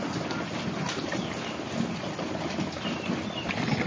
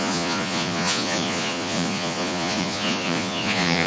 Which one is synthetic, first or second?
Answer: second